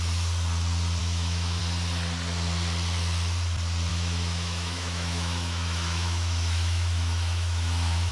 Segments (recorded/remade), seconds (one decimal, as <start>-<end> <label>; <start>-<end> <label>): 0.0-1.0 recorded; 1.0-1.6 remade; 1.6-3.9 recorded; 3.9-8.1 remade